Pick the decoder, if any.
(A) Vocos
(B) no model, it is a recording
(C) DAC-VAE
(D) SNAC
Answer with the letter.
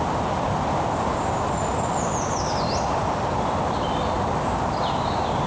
B